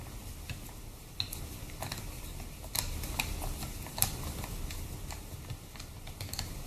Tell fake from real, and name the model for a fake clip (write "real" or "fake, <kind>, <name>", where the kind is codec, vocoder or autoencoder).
real